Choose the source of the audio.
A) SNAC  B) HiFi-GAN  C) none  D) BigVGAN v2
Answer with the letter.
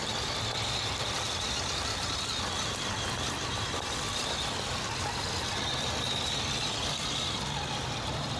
C